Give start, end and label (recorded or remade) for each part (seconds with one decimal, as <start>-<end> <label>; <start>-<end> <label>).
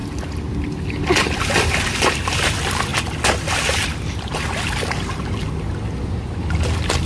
0.0-7.1 recorded